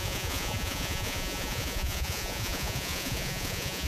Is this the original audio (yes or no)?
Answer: no